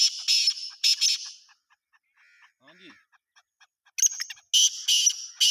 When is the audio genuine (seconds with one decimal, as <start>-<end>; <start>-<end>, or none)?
0.0-5.5